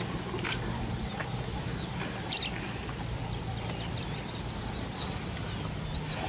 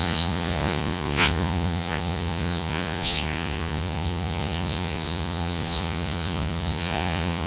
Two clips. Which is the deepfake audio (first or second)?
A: second